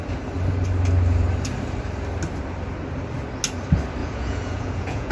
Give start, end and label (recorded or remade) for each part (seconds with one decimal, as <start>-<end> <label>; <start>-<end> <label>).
0.0-4.0 recorded; 4.0-5.1 remade